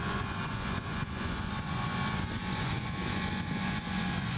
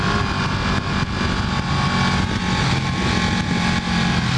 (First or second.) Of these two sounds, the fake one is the first